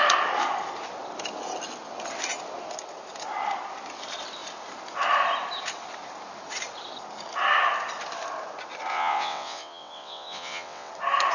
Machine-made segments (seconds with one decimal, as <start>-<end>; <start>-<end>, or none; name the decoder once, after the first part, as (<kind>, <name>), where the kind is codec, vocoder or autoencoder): 8.9-10.9 (vocoder, WaveNeXt)

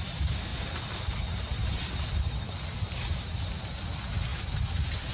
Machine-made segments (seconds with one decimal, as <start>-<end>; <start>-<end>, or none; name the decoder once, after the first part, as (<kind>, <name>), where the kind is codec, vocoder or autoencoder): none

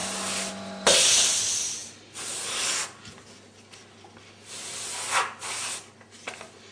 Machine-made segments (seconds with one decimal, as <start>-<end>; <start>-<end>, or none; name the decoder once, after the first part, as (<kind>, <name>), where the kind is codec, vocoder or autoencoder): none

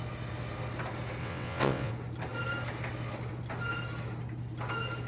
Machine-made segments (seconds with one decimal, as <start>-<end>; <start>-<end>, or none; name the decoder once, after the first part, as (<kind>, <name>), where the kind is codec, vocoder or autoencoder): 1.2-1.9 (vocoder, WaveNeXt)

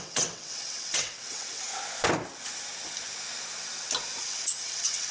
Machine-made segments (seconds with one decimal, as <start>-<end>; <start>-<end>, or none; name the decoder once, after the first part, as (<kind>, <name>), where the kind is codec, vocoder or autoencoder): 0.0-1.7 (vocoder, WaveNeXt); 4.2-5.1

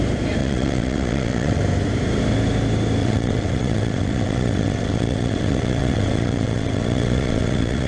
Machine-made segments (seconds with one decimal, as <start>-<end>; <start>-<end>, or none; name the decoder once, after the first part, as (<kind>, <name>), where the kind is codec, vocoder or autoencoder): 0.4-1.6 (vocoder, WaveNeXt); 3.0-7.9